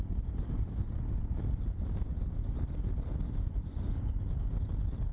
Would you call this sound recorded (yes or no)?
yes